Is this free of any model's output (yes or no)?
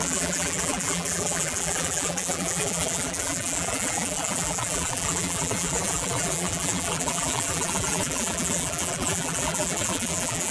no